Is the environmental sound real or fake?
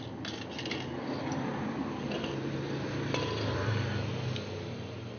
real